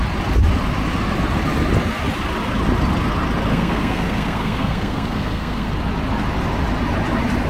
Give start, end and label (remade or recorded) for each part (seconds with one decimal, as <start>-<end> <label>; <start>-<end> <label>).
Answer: 0.0-3.5 recorded; 3.5-5.7 remade; 5.7-7.5 recorded